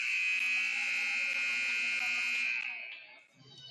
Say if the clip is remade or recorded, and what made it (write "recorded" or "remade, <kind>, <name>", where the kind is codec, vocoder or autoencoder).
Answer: recorded